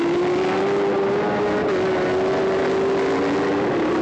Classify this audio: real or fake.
real